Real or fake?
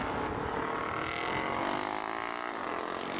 real